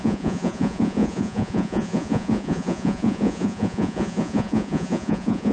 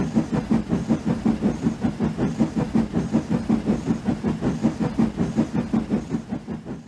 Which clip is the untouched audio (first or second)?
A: second